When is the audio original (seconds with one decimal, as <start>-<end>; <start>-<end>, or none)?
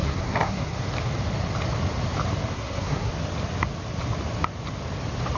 0.8-2.5; 3.1-5.4